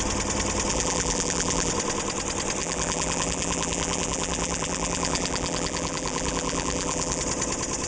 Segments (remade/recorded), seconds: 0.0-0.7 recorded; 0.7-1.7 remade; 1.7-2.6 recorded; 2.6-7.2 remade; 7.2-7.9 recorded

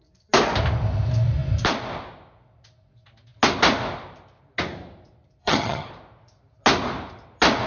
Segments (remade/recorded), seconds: 0.0-5.4 recorded; 5.4-5.9 remade; 5.9-7.7 recorded

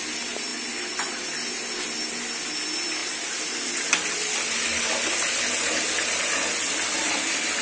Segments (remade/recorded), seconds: 0.0-7.6 recorded

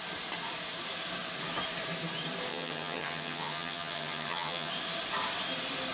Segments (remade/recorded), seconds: 0.0-2.5 recorded; 2.5-4.7 remade; 4.7-5.9 recorded

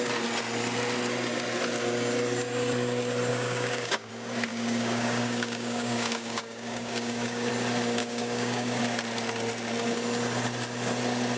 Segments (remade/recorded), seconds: 0.0-3.3 recorded; 3.3-4.1 remade; 4.1-4.5 recorded; 4.5-7.5 remade; 7.5-8.0 recorded; 8.0-8.8 remade; 8.8-11.4 recorded

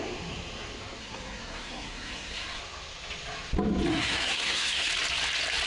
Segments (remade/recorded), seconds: 0.0-1.0 recorded; 1.0-2.6 remade; 2.6-3.9 recorded; 3.9-4.9 remade; 4.9-5.7 recorded

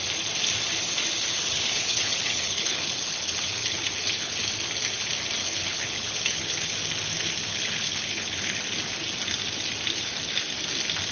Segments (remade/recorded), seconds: 0.0-1.3 recorded; 1.3-4.4 remade; 4.4-5.4 recorded; 5.4-6.7 remade; 6.7-7.5 recorded; 7.5-8.6 remade; 8.6-11.1 recorded

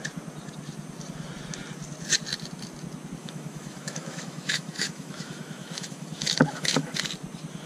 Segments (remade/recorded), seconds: 0.0-3.2 recorded; 3.2-7.0 remade; 7.0-7.7 recorded